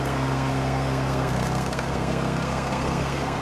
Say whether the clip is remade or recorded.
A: remade